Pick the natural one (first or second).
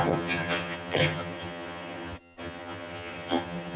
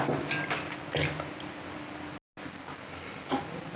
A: second